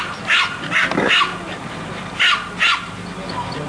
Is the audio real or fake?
real